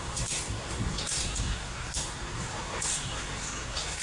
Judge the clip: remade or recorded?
remade